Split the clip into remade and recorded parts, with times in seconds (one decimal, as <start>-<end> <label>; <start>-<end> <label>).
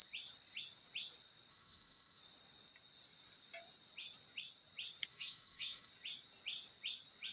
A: 0.0-1.5 recorded; 1.5-2.2 remade; 2.2-5.1 recorded; 5.1-5.9 remade; 5.9-7.3 recorded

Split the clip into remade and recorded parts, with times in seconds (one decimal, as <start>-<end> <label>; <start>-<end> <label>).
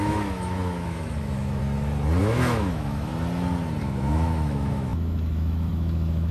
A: 0.0-1.6 remade; 1.6-2.2 recorded; 2.2-3.1 remade; 3.1-3.8 recorded; 3.8-6.3 remade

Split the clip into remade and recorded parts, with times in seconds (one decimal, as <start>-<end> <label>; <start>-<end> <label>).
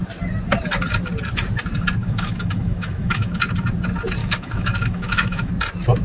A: 0.0-2.0 recorded; 2.0-3.4 remade; 3.4-4.2 recorded; 4.2-5.5 remade; 5.5-6.0 recorded